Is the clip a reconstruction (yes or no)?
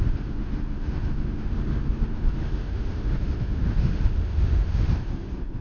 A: yes